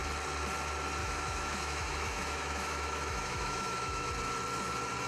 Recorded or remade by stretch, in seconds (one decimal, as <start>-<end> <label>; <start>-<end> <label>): 0.0-1.0 recorded; 1.0-4.1 remade; 4.1-5.1 recorded